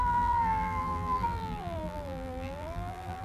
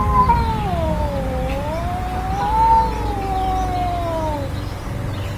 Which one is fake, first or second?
first